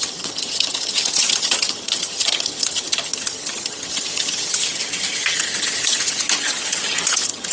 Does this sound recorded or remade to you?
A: remade